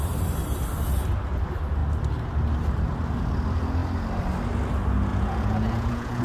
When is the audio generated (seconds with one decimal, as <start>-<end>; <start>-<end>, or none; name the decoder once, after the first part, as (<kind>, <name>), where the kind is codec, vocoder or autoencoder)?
5.1-6.2 (vocoder, Vocos)